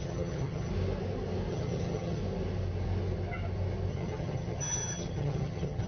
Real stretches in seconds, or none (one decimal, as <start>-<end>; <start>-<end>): 0.7-1.5; 2.2-3.9